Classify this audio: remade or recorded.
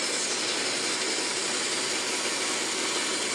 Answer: remade